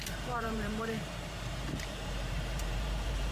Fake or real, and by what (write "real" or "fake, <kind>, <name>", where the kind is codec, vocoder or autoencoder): fake, vocoder, BigVGAN v2